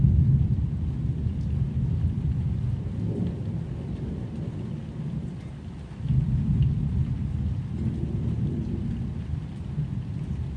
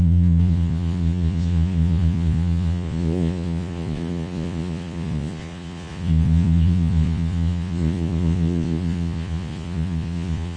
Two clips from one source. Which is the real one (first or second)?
first